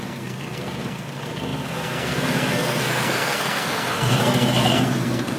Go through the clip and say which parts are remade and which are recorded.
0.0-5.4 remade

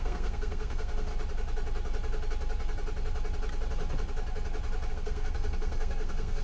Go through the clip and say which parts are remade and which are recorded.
0.0-1.1 remade; 1.1-4.9 recorded; 4.9-6.4 remade